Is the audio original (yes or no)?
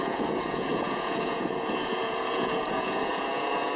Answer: no